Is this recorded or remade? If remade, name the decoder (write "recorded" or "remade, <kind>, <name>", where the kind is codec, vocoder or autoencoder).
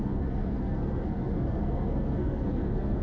remade, codec, SNAC